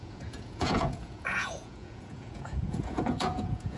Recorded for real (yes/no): no